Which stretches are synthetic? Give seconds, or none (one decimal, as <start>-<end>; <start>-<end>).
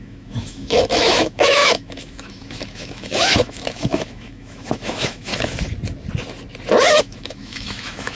0.0-5.3; 7.0-8.1